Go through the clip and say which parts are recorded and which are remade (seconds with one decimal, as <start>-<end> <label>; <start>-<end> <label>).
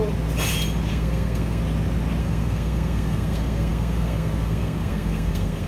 0.0-0.9 recorded; 0.9-1.6 remade; 1.6-2.2 recorded; 2.2-5.7 remade